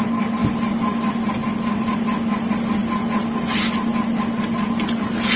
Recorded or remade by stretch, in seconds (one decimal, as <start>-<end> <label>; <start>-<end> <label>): 0.0-5.4 recorded